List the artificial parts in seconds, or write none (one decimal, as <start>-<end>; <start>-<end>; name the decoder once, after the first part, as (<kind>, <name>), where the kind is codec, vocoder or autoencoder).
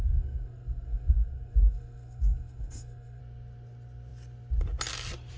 0.0-3.2 (codec, SNAC)